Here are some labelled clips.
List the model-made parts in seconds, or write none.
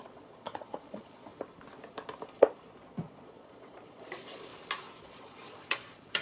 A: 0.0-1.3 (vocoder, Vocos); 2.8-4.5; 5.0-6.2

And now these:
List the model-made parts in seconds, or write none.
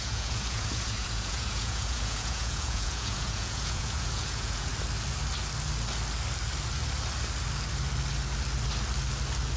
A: 0.0-4.7 (vocoder, Vocos)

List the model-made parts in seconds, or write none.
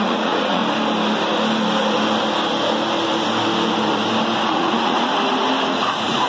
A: 0.0-0.6 (vocoder, Vocos); 4.4-5.1; 5.7-6.3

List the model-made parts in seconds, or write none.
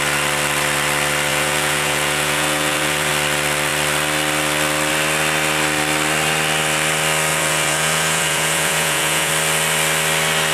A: 1.3-3.1 (vocoder, Vocos); 7.3-9.3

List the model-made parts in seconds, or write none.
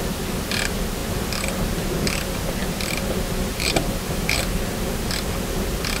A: none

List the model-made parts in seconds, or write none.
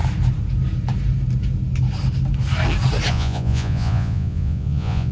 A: 3.1-5.1 (vocoder, Vocos)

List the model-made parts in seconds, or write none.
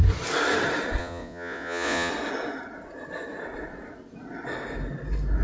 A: 1.0-2.1 (vocoder, Vocos)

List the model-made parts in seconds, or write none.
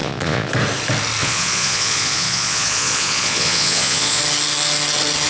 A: 0.0-0.5 (vocoder, Vocos); 1.2-4.2